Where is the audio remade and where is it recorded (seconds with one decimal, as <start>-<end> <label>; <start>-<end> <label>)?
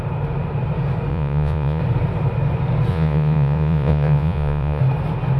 0.0-1.1 recorded; 1.1-1.8 remade; 1.8-2.9 recorded; 2.9-4.8 remade; 4.8-5.4 recorded